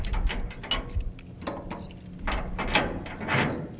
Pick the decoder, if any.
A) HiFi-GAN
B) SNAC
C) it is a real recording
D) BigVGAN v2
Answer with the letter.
C